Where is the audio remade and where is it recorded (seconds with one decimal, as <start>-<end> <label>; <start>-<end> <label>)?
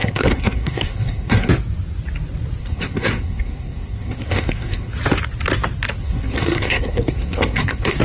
0.0-1.5 remade; 1.5-2.6 recorded; 2.6-4.9 remade; 4.9-6.0 recorded; 6.0-8.0 remade